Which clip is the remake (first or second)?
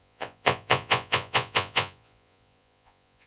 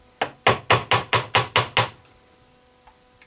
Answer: first